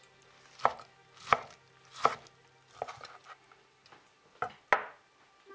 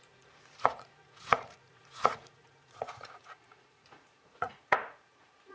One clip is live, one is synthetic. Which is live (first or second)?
first